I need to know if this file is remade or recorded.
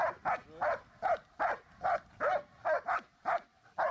recorded